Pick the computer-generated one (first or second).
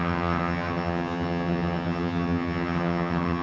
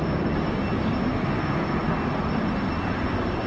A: first